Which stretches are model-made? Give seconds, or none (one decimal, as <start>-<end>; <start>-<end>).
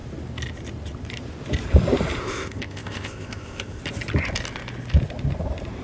2.2-3.8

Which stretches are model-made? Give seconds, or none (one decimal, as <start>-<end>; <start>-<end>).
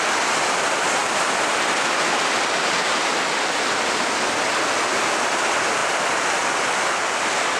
0.0-7.6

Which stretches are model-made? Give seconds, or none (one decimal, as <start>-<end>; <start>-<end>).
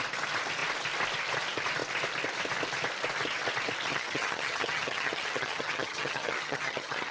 3.9-7.1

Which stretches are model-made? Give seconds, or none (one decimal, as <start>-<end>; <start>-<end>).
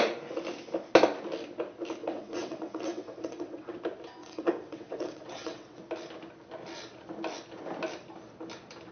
2.0-3.8; 4.2-5.8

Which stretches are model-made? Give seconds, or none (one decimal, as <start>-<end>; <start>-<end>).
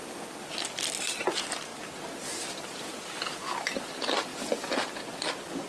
0.0-4.3; 4.9-5.7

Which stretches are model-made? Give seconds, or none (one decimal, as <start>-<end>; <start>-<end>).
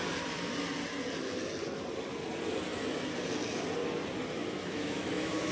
4.4-5.5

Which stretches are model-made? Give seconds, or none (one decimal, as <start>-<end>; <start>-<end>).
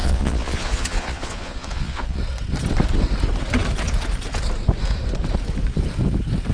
0.0-2.2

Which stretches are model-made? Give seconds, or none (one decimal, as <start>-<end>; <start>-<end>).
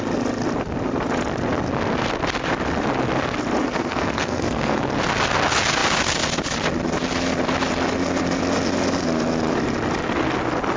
3.6-4.8